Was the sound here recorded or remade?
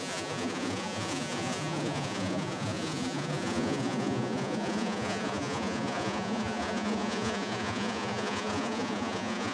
remade